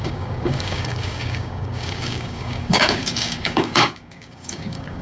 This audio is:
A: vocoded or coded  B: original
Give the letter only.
A